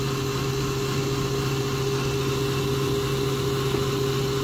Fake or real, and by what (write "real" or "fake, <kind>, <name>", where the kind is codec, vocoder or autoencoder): real